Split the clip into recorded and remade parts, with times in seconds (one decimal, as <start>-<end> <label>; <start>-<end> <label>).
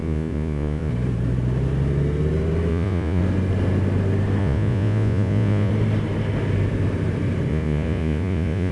0.0-0.9 remade; 0.9-2.7 recorded; 2.7-3.2 remade; 3.2-4.4 recorded; 4.4-5.7 remade; 5.7-7.5 recorded; 7.5-8.7 remade